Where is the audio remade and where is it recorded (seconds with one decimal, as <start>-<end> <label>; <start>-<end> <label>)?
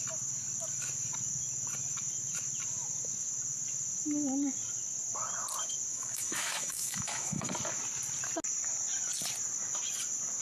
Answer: 0.0-5.9 recorded; 5.9-7.5 remade; 7.5-10.4 recorded